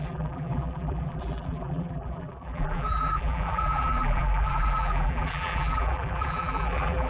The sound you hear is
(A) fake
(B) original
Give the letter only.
A